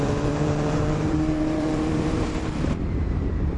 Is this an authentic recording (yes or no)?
no